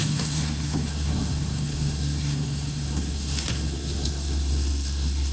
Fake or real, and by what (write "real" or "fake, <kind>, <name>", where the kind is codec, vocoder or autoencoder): fake, codec, SNAC